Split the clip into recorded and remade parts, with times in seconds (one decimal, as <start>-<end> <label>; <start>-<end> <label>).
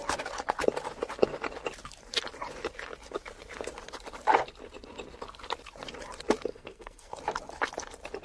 0.0-6.5 recorded; 6.5-7.2 remade; 7.2-8.2 recorded